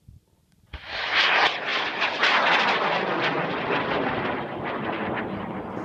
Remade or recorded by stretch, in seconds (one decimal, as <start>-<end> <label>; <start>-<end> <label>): 0.0-5.8 recorded